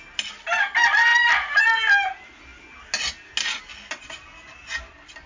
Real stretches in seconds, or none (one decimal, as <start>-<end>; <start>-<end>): 0.0-5.3